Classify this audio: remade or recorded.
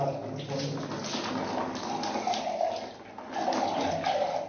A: recorded